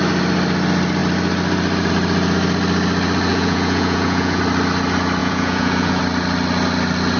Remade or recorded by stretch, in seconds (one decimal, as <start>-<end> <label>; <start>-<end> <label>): 0.0-3.3 recorded; 3.3-4.4 remade; 4.4-5.2 recorded; 5.2-6.0 remade; 6.0-7.2 recorded